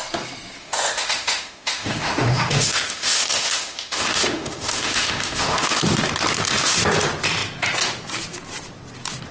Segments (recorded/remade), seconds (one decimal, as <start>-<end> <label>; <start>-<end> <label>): 0.0-0.6 recorded; 0.6-5.8 remade; 5.8-9.3 recorded